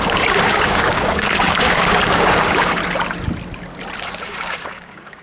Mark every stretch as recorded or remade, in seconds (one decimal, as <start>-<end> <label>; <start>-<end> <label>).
0.0-2.8 remade; 2.8-4.0 recorded; 4.0-5.2 remade